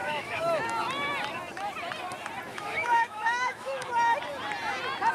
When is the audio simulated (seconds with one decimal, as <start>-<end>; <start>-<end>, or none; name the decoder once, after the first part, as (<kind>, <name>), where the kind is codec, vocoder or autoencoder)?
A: 0.0-0.6 (autoencoder, DAC-VAE); 2.5-3.9